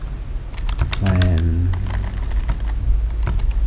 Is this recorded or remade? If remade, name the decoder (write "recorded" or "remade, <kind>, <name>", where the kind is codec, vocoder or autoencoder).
recorded